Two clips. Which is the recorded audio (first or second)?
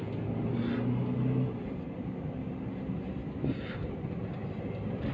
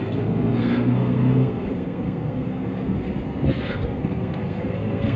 first